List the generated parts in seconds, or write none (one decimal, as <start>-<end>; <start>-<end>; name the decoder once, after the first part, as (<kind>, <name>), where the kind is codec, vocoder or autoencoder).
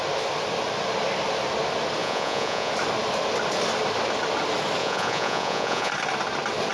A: 2.0-2.7 (vocoder, Vocos); 4.8-5.9